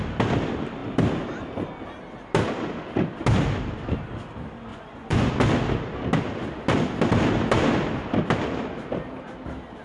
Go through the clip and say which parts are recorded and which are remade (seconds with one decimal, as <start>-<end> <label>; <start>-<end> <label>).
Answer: 0.0-4.7 recorded; 4.7-5.3 remade; 5.3-9.8 recorded